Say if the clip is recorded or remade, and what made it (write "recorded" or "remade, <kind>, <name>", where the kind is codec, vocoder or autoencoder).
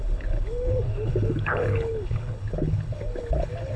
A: remade, codec, HILCodec